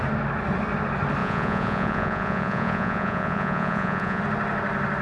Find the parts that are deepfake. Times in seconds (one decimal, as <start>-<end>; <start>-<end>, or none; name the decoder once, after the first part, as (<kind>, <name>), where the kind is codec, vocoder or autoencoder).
1.2-4.2 (vocoder, Vocos)